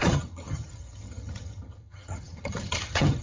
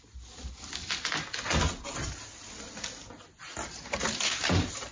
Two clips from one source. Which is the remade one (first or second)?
first